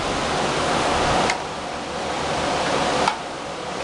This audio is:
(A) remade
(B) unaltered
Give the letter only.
B